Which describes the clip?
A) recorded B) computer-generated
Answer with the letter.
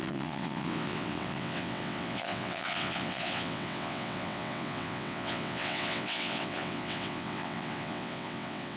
B